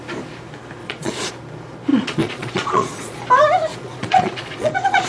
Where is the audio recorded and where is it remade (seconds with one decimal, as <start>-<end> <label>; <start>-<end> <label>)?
0.0-0.8 recorded; 0.8-1.3 remade; 1.3-1.9 recorded; 1.9-3.2 remade; 3.2-3.7 recorded; 3.7-5.1 remade